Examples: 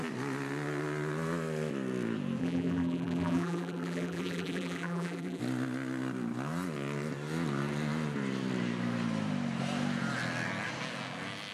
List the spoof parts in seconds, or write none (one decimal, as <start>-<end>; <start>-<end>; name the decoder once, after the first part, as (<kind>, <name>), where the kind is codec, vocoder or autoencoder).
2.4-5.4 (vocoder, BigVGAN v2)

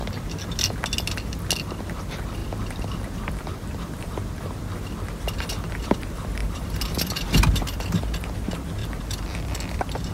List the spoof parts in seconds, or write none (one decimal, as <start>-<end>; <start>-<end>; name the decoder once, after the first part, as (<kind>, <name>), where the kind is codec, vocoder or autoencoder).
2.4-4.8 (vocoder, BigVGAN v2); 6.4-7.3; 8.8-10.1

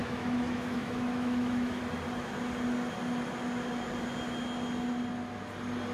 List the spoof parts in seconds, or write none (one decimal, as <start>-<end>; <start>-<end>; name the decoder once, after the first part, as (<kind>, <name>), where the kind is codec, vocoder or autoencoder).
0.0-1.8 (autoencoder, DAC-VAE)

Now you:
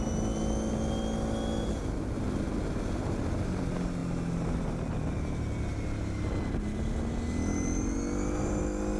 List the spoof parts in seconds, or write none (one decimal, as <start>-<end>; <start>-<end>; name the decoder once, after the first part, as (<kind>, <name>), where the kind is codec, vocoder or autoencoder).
none

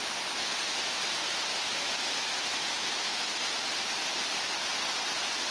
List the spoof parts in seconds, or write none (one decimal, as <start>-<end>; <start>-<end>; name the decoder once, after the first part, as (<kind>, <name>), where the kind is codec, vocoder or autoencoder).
1.5-3.5 (autoencoder, DAC-VAE)